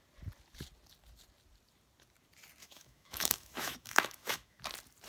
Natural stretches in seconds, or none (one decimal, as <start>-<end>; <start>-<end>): 0.0-2.6; 4.6-5.1